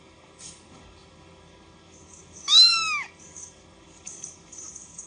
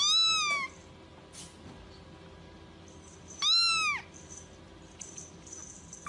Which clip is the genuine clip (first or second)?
second